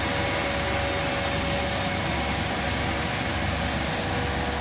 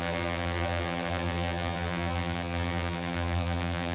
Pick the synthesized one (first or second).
second